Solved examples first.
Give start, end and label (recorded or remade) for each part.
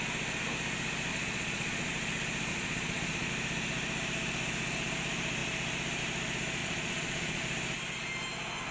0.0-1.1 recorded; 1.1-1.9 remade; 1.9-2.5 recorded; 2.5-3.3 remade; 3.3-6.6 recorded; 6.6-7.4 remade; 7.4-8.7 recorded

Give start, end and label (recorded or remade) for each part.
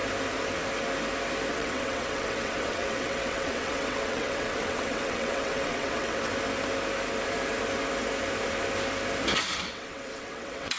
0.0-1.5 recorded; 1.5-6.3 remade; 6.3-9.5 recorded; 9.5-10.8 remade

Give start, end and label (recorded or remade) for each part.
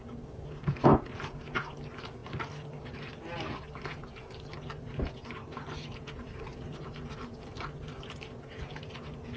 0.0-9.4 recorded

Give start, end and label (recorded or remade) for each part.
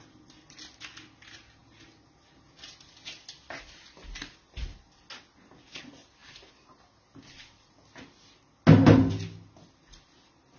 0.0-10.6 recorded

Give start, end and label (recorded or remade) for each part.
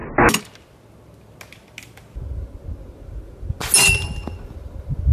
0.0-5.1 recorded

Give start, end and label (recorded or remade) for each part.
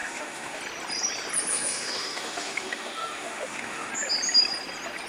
0.0-0.6 remade; 0.6-1.5 recorded; 1.5-3.9 remade; 3.9-5.1 recorded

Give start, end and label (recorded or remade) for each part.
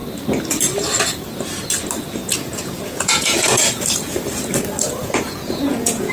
0.0-2.2 recorded; 2.2-3.8 remade; 3.8-5.0 recorded; 5.0-6.1 remade